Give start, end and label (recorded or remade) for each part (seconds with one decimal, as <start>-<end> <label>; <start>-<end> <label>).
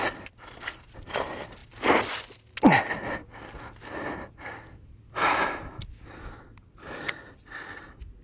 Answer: 0.0-8.2 recorded